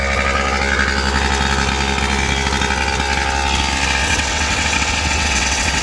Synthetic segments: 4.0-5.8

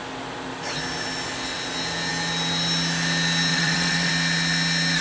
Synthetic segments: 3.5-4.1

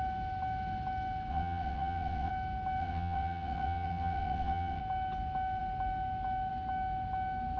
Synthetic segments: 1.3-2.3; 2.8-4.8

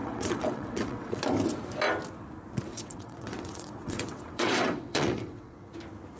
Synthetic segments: 0.0-1.2; 2.7-5.7

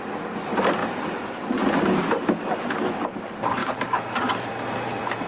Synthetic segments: none

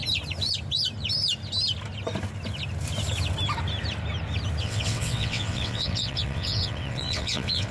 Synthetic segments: 4.6-7.7

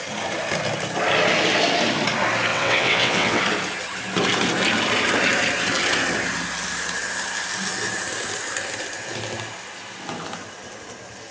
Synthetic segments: 2.5-3.4